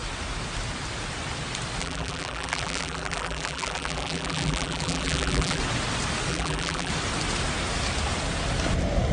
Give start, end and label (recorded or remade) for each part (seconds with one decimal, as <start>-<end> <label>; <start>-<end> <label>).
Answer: 0.0-1.8 recorded; 1.8-5.6 remade; 5.6-6.3 recorded; 6.3-6.9 remade; 6.9-9.1 recorded